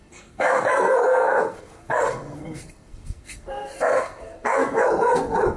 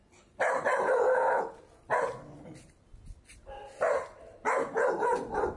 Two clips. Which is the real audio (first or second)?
second